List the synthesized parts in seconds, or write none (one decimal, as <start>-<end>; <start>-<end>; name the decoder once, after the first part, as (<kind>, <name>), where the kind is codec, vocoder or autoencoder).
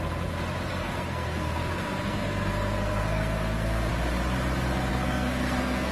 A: 0.7-3.9 (codec, SNAC); 4.9-5.9